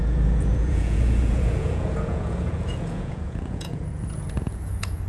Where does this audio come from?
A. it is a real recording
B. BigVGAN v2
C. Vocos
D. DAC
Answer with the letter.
C